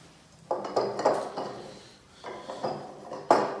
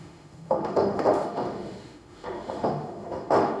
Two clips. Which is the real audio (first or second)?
first